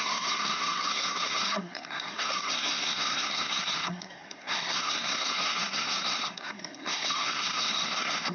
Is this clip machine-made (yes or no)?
yes